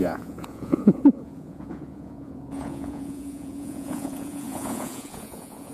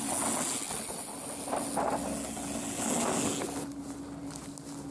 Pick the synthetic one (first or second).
first